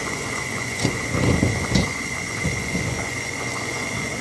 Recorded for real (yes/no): no